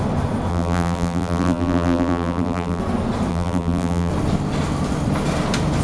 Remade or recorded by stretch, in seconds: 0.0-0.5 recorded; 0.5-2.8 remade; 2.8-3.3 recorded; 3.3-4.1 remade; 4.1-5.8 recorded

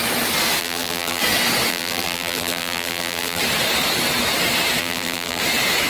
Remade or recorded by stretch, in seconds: 0.0-0.6 recorded; 0.6-1.2 remade; 1.2-1.7 recorded; 1.7-3.4 remade; 3.4-4.8 recorded; 4.8-5.4 remade; 5.4-5.9 recorded

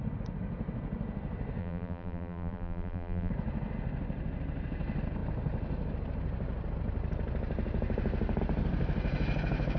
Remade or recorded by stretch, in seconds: 0.0-1.6 recorded; 1.6-3.3 remade; 3.3-9.8 recorded

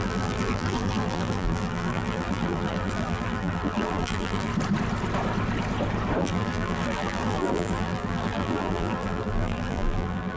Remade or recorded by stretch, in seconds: 0.0-4.5 remade; 4.5-6.2 recorded; 6.2-10.4 remade

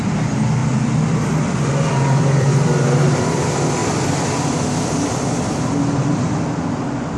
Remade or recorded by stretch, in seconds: 0.0-0.6 recorded; 0.6-3.4 remade; 3.4-3.8 recorded; 3.8-6.4 remade; 6.4-7.2 recorded

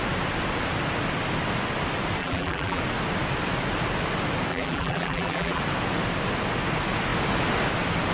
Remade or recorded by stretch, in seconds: 0.0-2.2 recorded; 2.2-2.8 remade; 2.8-4.5 recorded; 4.5-5.6 remade; 5.6-8.1 recorded